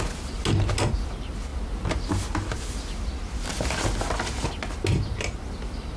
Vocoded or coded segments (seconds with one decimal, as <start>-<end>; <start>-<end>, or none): none